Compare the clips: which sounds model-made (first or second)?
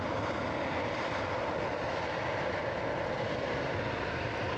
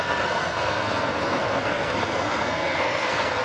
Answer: second